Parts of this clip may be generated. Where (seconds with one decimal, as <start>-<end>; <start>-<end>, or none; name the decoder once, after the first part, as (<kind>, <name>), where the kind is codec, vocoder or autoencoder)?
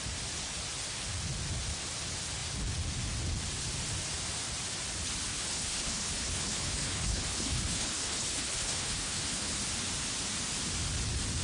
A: 5.3-9.5 (codec, HILCodec)